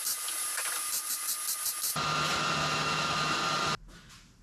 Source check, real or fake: real